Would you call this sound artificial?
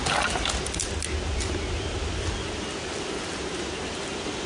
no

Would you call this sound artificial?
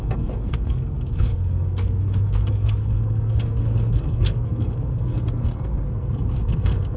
yes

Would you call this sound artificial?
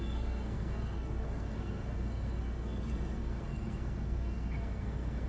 yes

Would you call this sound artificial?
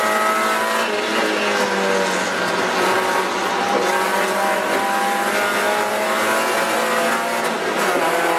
no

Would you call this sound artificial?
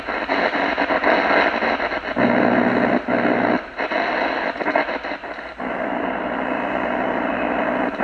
no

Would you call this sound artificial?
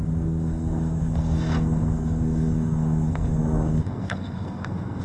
yes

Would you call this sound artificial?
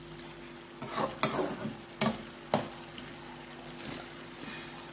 no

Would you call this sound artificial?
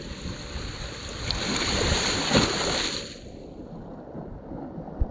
no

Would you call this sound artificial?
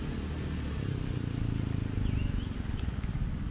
no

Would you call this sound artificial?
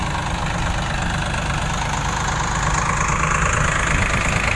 no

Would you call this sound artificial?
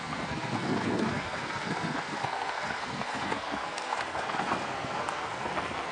yes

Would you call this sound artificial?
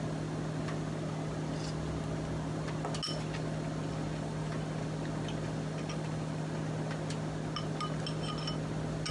no